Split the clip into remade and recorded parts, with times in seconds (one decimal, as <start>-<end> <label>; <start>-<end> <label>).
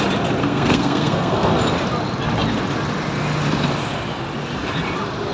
0.0-0.4 recorded; 0.4-1.5 remade; 1.5-5.3 recorded